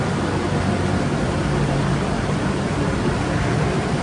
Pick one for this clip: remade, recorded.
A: remade